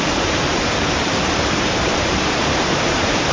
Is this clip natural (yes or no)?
no